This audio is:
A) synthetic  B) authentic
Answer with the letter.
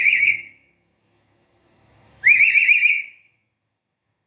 A